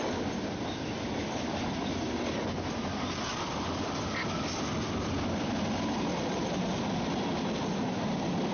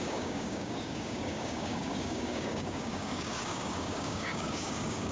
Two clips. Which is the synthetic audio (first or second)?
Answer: second